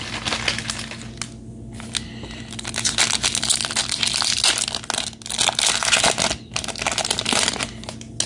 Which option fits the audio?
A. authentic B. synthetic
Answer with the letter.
A